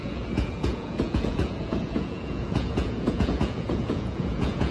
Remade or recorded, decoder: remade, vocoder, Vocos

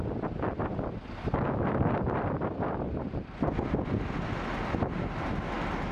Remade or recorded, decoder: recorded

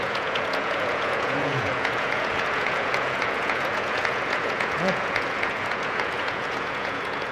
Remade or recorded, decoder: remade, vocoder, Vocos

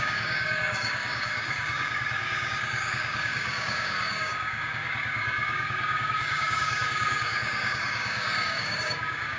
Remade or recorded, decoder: remade, codec, DAC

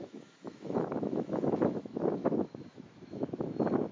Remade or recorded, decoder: remade, autoencoder, DAC-VAE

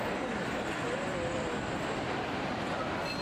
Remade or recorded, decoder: recorded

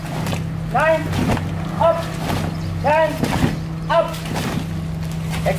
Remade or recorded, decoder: recorded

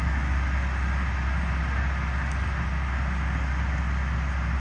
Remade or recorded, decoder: recorded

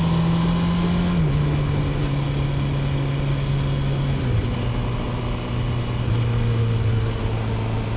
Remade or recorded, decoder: recorded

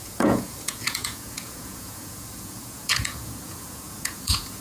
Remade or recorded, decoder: remade, vocoder, Vocos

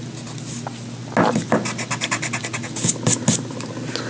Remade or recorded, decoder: recorded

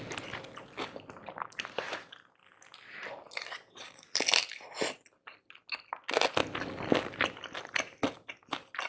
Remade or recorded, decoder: recorded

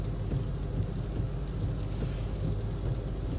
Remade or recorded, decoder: recorded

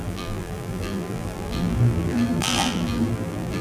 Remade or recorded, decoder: remade, vocoder, BigVGAN v2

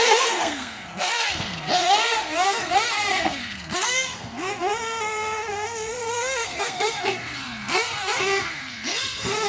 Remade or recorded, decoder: remade, codec, SNAC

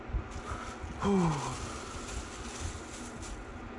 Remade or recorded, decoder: recorded